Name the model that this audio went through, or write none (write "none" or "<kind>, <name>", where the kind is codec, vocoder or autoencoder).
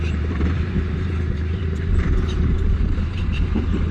vocoder, BigVGAN v2